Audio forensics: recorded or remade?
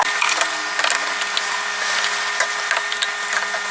recorded